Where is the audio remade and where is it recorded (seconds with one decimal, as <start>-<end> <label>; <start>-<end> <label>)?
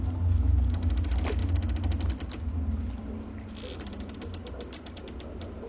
0.0-5.7 recorded